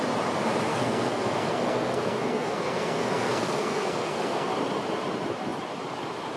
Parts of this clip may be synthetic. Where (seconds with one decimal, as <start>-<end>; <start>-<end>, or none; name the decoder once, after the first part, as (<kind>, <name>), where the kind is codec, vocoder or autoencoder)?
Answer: 0.7-4.5 (codec, SNAC)